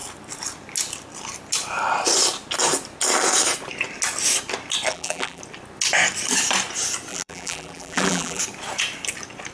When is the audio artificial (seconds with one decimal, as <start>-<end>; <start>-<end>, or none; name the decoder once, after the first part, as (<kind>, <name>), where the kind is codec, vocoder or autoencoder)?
4.9-5.4 (vocoder, BigVGAN v2); 7.1-8.4